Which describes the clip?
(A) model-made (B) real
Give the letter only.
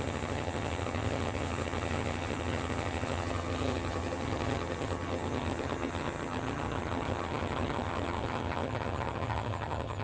A